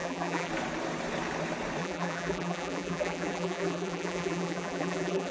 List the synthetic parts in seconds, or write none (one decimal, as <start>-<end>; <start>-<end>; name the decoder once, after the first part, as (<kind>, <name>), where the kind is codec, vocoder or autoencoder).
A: 0.0-0.5 (vocoder, BigVGAN v2); 1.8-5.3